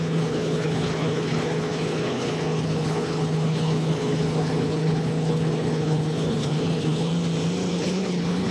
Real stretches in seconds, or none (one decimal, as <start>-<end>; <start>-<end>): 7.1-7.7